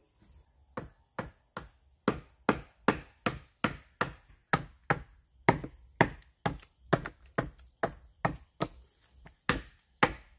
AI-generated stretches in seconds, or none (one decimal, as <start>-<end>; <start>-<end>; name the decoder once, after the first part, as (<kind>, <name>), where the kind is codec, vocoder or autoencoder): none